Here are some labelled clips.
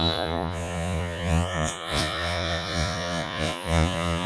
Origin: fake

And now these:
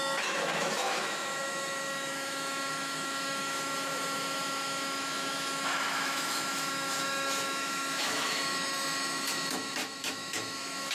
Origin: fake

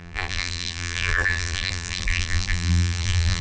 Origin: fake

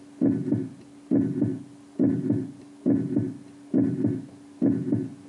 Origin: real